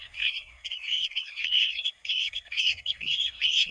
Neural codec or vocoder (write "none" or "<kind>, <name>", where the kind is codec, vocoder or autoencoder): codec, SNAC